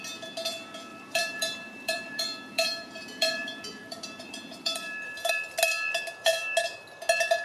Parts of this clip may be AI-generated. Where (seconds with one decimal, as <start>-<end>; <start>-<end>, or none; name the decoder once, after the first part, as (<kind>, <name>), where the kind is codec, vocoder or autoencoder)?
0.9-5.3 (vocoder, BigVGAN v2)